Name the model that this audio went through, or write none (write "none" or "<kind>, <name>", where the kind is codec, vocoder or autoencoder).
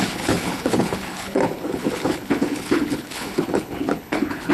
codec, HILCodec